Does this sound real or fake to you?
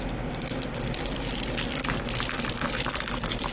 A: fake